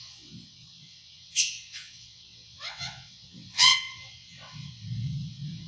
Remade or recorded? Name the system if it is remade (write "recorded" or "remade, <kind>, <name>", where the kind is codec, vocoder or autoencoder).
remade, vocoder, WaveNeXt